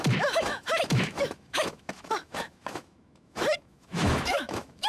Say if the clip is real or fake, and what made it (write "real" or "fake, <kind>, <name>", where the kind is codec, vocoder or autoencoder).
fake, autoencoder, DAC-VAE